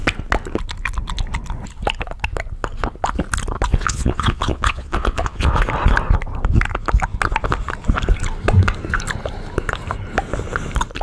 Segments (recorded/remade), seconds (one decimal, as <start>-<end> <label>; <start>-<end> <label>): 0.0-3.7 recorded; 3.7-5.6 remade; 5.6-11.0 recorded